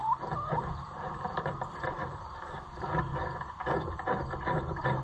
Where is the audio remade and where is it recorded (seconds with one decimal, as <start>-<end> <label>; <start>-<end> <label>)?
0.0-3.0 remade; 3.0-5.0 recorded